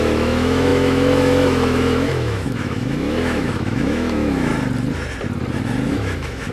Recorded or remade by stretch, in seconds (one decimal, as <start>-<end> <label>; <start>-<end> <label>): 0.0-4.5 remade; 4.5-5.9 recorded; 5.9-6.5 remade